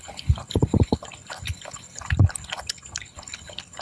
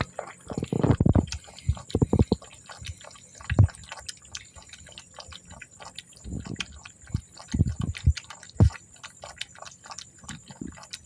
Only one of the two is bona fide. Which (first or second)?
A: second